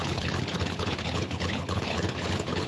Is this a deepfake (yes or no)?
yes